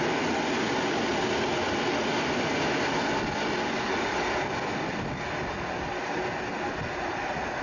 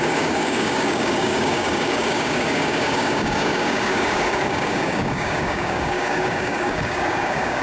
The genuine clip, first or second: first